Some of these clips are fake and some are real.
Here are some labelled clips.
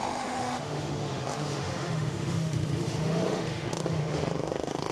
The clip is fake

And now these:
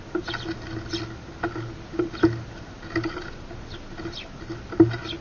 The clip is real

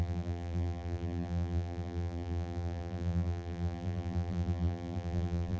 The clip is fake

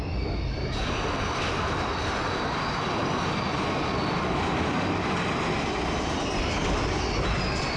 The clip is real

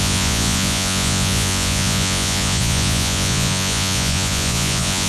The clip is fake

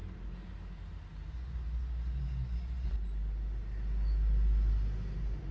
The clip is real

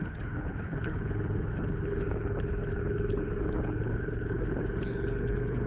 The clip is fake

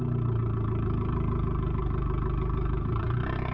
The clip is fake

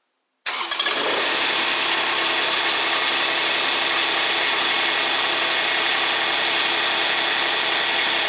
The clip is real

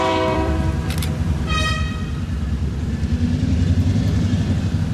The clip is fake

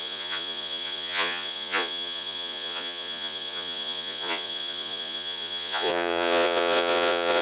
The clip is fake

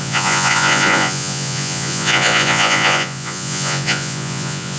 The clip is fake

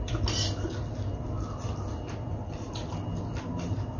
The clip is real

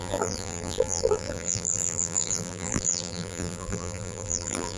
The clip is fake